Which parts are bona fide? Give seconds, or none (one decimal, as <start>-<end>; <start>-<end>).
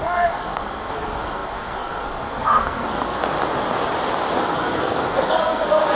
3.2-4.4